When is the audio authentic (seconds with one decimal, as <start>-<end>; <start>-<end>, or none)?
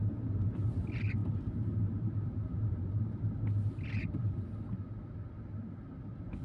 0.0-6.4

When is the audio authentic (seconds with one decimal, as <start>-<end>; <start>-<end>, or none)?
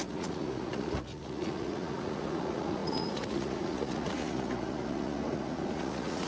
none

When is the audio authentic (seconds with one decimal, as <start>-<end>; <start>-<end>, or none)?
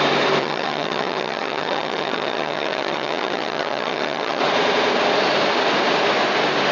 0.0-0.4; 4.4-6.7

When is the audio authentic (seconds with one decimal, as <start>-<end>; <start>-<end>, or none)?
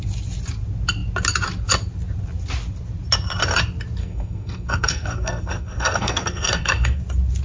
0.0-4.0; 7.0-7.4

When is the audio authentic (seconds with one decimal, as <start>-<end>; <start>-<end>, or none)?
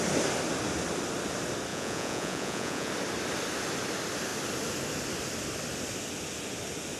0.0-1.7; 2.9-7.0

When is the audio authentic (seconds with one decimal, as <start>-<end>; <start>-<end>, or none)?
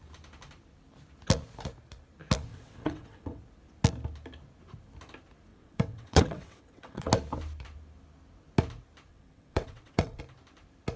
0.0-2.5; 3.4-5.5; 7.1-9.1; 10.2-11.0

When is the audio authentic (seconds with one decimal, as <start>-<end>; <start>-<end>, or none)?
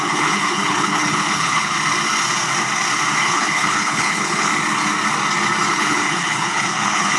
1.7-3.2; 4.5-5.7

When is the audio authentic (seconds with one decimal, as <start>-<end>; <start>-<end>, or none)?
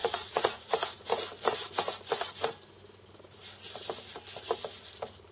0.7-5.3